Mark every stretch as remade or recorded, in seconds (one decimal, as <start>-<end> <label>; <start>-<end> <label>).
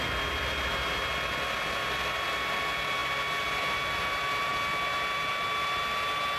0.0-6.4 recorded